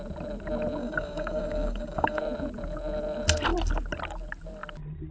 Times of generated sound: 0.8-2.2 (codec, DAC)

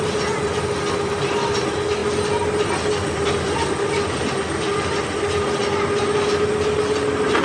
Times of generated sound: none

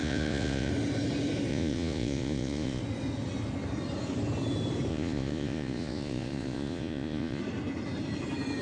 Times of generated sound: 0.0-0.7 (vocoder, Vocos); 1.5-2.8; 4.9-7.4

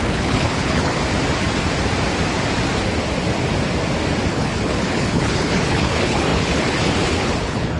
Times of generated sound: 0.0-1.0 (codec, HILCodec); 4.3-7.8